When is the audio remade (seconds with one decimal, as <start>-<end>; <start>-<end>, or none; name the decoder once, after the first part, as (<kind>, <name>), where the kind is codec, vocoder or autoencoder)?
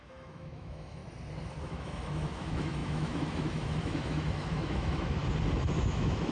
0.0-1.0 (autoencoder, DAC-VAE); 1.6-5.2; 5.8-6.3